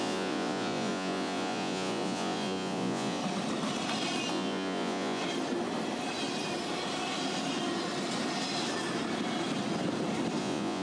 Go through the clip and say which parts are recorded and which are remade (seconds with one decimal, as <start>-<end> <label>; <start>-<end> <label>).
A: 0.0-3.2 remade; 3.2-4.3 recorded; 4.3-5.2 remade; 5.2-10.4 recorded; 10.4-10.8 remade